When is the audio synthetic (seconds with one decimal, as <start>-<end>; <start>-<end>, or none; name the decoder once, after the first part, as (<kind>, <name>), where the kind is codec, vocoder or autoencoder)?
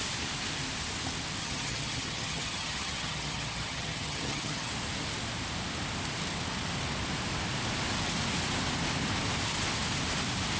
1.4-4.7 (vocoder, HiFi-GAN)